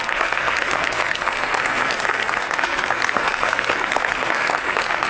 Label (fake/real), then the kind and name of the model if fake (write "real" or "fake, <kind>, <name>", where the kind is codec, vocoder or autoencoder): fake, codec, SNAC